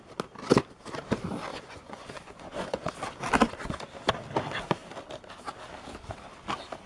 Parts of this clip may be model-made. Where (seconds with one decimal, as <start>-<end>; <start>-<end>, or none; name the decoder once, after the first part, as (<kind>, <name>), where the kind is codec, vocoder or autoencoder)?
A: 1.5-2.9 (vocoder, Vocos)